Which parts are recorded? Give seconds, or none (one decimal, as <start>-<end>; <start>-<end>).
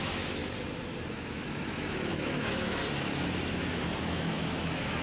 0.4-1.1; 2.8-4.0